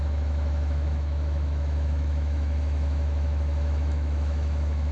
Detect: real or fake fake